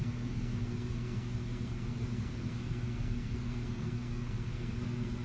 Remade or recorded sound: remade